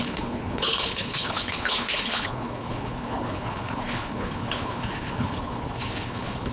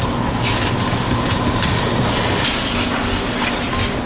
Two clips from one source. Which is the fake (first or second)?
first